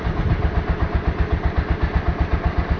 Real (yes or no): yes